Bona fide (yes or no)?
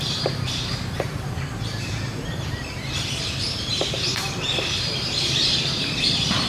no